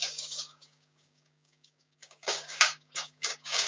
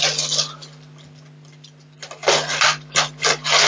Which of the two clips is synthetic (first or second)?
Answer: first